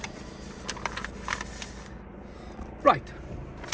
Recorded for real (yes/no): yes